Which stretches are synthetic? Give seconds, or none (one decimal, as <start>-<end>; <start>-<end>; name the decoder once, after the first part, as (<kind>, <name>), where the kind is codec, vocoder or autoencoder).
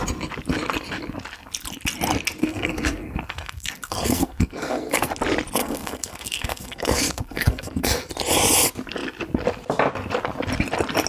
2.4-5.1 (codec, SNAC); 5.6-8.1